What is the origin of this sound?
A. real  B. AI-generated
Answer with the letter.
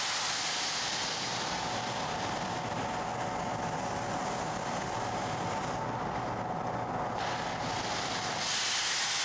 A